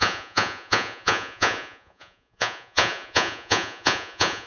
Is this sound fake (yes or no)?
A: yes